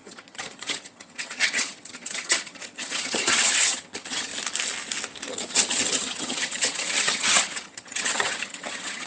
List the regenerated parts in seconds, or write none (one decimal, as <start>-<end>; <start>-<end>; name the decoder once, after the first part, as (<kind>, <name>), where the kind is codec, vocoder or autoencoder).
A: 0.0-4.3 (vocoder, HiFi-GAN); 5.3-9.1